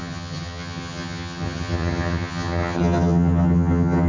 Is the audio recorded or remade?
remade